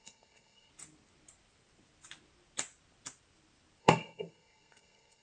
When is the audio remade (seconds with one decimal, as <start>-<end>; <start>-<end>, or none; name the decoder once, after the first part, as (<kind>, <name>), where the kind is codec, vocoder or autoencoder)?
0.0-0.7 (codec, SNAC); 3.8-5.2